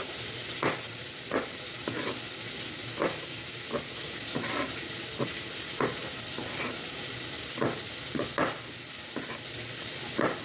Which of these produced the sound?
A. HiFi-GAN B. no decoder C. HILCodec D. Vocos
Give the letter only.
B